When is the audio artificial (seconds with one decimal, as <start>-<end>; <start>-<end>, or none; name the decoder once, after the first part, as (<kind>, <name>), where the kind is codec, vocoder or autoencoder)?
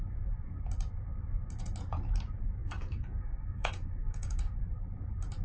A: 2.6-4.6 (codec, DAC)